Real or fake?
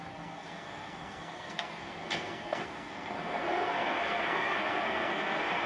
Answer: fake